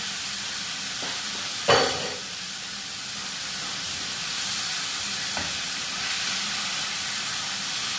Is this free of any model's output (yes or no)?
no